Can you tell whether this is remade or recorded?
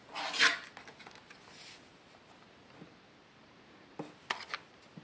recorded